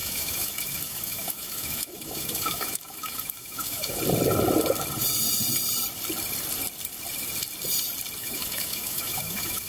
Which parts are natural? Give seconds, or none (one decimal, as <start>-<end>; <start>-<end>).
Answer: 4.0-8.2